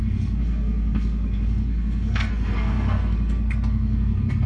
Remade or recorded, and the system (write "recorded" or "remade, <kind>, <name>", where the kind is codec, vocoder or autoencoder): remade, codec, SNAC